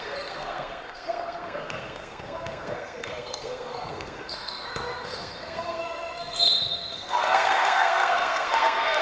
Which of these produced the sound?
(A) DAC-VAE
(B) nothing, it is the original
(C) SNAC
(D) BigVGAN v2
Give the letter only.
C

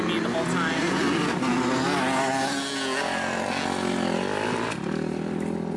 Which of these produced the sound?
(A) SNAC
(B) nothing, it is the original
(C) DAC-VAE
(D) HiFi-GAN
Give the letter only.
B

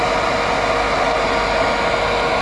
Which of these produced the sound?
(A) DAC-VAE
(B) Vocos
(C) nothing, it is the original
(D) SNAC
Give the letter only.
C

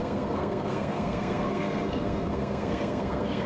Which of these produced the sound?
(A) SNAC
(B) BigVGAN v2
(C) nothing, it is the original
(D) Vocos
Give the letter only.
A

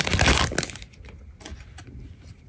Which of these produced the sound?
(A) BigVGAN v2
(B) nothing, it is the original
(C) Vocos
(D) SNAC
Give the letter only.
B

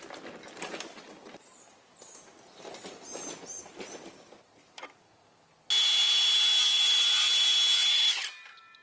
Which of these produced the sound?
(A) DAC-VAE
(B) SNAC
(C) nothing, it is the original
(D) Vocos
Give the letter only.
C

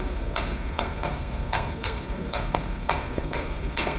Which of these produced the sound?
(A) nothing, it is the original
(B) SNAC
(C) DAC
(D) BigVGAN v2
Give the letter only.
B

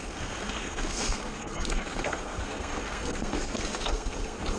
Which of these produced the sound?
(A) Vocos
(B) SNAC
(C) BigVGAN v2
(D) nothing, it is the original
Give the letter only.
B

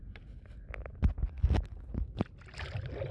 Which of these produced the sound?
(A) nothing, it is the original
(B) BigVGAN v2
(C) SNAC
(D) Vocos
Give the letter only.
A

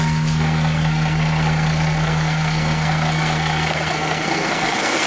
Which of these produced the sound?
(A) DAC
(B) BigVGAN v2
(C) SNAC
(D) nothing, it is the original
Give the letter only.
C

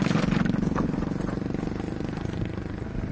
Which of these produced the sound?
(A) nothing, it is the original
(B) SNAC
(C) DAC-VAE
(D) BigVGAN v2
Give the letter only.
A